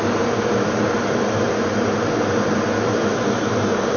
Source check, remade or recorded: recorded